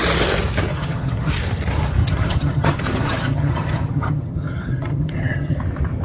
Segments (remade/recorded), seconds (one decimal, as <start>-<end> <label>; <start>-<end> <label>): 0.0-0.7 recorded; 0.7-1.3 remade; 1.3-2.0 recorded; 2.0-5.6 remade; 5.6-6.0 recorded